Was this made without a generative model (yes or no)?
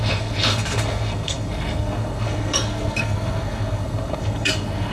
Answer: no